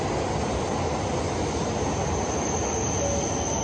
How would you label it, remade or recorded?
recorded